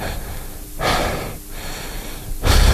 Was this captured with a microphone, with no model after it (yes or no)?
yes